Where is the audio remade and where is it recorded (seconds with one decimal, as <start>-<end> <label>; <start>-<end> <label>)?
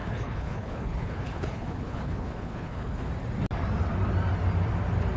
0.0-3.1 remade; 3.1-5.2 recorded